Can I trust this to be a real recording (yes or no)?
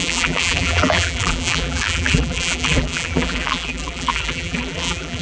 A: no